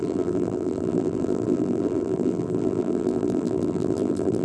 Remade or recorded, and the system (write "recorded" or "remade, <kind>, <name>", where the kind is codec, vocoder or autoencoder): remade, vocoder, BigVGAN v2